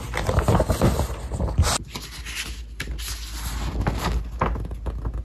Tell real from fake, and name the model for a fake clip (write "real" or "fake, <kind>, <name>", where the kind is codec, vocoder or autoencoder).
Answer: real